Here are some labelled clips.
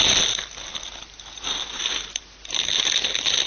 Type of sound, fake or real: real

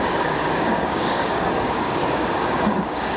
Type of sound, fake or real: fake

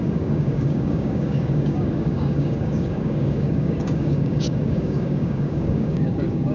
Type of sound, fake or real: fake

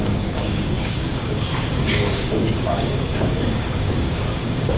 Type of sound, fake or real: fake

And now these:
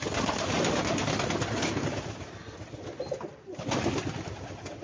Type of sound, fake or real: real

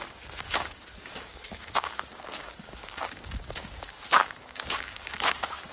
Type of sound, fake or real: fake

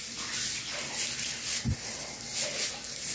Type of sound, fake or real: real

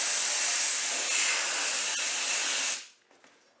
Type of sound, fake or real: real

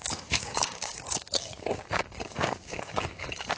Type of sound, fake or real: fake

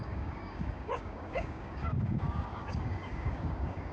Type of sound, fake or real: fake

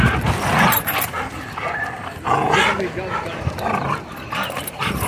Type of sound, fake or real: real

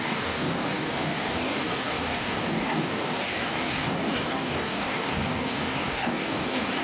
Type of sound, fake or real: fake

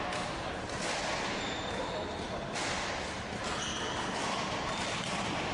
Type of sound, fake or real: real